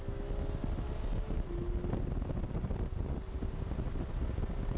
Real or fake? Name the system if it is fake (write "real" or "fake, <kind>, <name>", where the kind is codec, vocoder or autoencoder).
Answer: real